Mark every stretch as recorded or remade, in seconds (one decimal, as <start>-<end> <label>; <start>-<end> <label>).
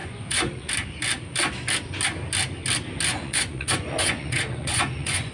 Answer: 0.0-0.7 remade; 0.7-3.1 recorded; 3.1-5.3 remade